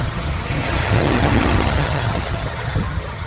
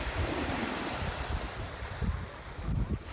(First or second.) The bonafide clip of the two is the second